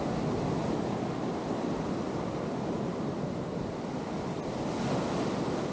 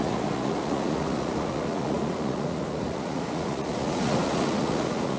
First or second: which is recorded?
first